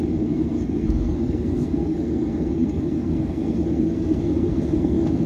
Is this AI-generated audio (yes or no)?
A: yes